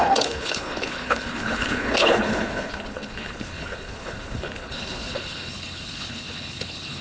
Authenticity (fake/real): fake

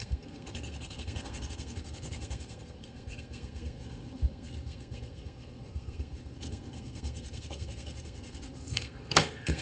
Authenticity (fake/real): fake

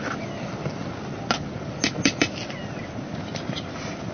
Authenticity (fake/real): real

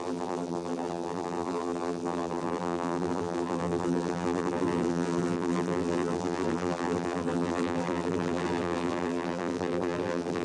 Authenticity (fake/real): fake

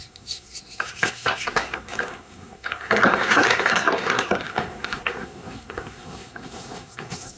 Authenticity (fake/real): fake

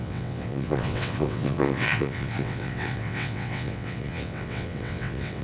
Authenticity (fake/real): fake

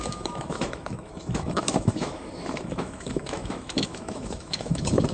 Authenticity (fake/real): fake